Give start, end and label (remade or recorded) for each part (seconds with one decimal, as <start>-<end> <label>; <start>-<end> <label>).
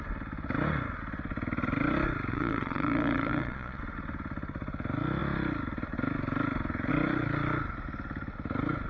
0.0-2.3 recorded; 2.3-3.8 remade; 3.8-8.9 recorded